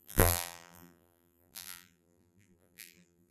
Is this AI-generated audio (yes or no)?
yes